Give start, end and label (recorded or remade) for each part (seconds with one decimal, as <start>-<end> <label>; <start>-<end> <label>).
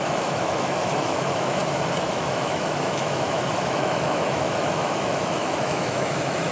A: 0.0-1.6 remade; 1.6-2.1 recorded; 2.1-6.5 remade